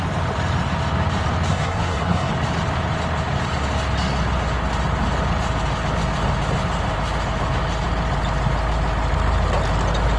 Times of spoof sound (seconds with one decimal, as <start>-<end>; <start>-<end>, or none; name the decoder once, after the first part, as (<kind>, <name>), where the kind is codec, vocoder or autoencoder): 1.5-2.3 (codec, SNAC)